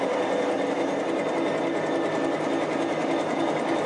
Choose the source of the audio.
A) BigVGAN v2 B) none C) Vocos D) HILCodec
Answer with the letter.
B